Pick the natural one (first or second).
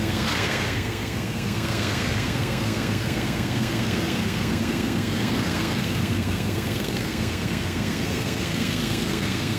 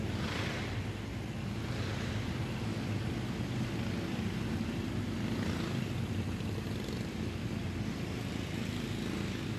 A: second